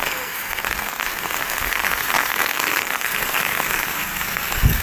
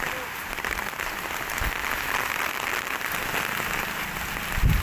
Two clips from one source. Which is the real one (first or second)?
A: second